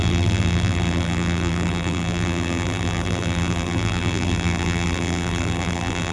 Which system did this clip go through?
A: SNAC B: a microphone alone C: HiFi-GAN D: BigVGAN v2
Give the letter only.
D